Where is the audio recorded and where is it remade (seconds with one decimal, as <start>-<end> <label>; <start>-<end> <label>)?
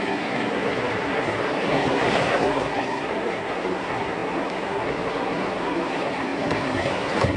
0.0-7.4 remade